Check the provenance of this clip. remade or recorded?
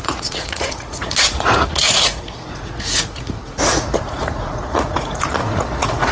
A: remade